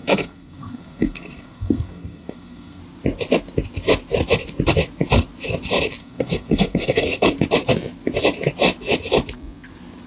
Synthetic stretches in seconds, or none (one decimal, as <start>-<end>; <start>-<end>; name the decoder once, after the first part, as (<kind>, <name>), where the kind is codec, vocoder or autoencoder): 0.0-2.8 (codec, SNAC); 6.0-7.3